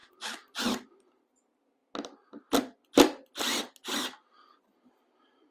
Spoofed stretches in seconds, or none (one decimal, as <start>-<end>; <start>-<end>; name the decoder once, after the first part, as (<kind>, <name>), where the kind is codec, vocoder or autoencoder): none